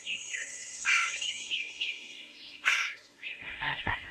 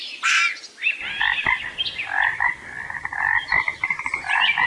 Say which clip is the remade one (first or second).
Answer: first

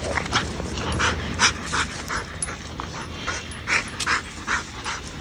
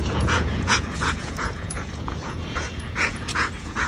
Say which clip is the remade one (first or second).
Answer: second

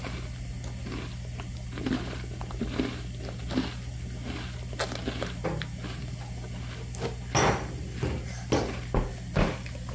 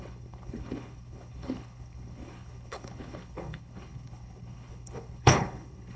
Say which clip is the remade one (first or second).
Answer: second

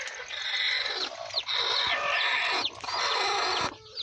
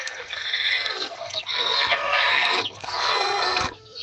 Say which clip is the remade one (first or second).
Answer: second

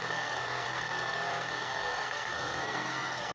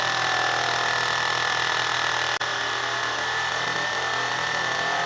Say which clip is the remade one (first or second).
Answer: first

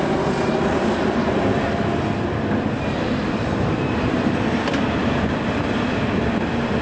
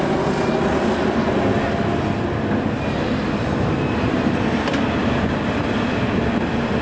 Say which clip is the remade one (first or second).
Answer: first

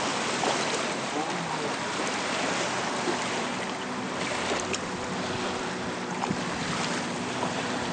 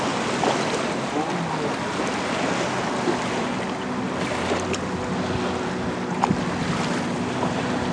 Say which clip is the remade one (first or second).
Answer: first